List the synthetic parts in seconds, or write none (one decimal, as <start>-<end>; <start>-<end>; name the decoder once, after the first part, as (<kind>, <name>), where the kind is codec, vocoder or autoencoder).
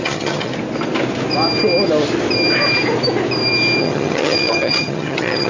0.0-0.5 (vocoder, HiFi-GAN); 3.8-5.5